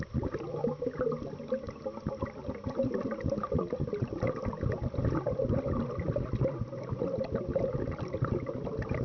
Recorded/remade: recorded